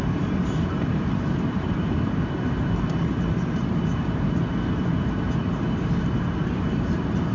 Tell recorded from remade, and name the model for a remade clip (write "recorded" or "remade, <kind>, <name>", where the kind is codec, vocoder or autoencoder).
remade, vocoder, BigVGAN v2